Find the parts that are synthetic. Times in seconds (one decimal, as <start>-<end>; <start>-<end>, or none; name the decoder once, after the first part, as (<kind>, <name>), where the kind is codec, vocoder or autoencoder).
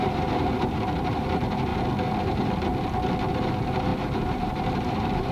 0.0-1.7 (vocoder, BigVGAN v2); 2.2-2.7; 3.3-5.3